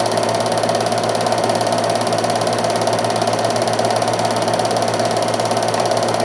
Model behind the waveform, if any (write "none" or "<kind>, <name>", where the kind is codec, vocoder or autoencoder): none